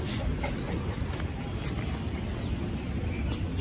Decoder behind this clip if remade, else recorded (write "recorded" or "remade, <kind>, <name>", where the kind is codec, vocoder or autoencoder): recorded